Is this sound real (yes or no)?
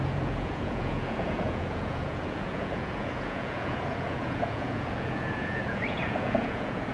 no